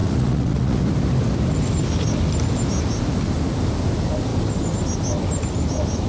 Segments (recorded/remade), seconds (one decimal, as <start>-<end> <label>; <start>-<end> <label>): 0.0-0.8 remade; 0.8-6.1 recorded